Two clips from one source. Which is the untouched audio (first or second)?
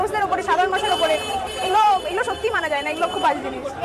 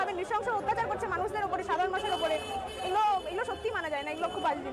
second